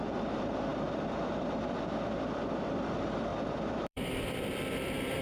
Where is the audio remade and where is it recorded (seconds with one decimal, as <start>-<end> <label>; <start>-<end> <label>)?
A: 0.0-5.2 remade